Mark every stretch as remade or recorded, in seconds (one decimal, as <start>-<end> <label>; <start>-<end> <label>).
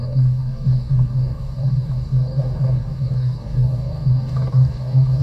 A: 0.0-5.2 remade